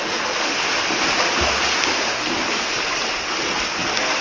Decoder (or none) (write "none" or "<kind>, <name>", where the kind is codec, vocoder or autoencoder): none